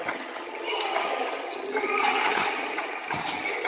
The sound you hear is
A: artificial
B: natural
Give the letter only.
A